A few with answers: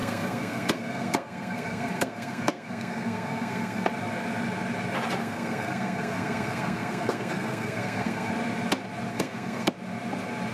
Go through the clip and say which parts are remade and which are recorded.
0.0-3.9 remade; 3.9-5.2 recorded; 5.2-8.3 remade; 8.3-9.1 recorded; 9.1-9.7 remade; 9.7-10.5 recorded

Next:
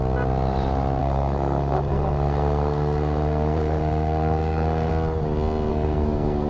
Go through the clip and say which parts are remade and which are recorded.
0.0-1.0 recorded; 1.0-4.9 remade; 4.9-5.7 recorded; 5.7-6.5 remade